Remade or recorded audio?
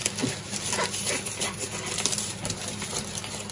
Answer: remade